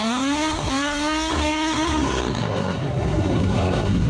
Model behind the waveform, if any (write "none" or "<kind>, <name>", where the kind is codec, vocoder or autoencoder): codec, SNAC